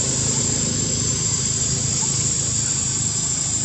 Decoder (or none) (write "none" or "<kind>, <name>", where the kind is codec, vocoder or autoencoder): none